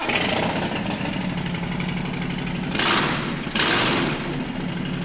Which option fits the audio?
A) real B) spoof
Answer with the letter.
A